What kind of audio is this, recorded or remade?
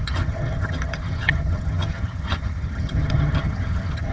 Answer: remade